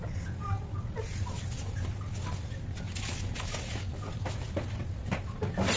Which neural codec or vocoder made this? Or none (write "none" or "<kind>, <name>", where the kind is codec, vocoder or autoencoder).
none